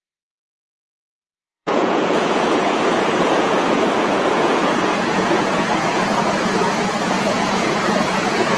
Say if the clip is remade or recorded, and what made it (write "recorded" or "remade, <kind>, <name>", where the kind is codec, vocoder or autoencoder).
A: remade, vocoder, Vocos